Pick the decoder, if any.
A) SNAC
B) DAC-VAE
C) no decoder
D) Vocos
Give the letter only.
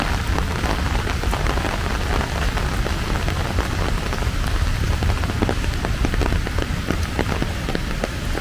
C